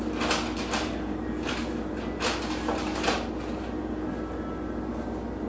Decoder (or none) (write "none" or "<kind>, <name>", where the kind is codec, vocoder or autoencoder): none